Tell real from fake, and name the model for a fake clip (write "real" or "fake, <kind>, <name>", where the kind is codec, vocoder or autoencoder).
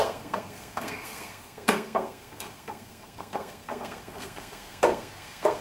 fake, codec, SNAC